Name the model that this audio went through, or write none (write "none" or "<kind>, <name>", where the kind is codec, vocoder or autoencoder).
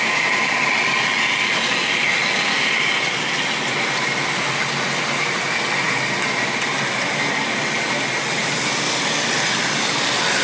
none